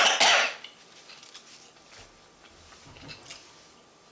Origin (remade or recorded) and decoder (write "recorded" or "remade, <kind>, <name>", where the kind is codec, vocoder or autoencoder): recorded